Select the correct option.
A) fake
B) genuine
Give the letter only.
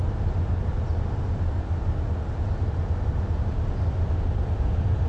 B